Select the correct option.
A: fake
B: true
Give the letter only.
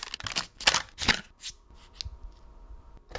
B